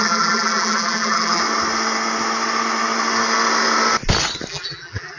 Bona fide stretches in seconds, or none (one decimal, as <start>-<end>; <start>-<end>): 1.4-4.5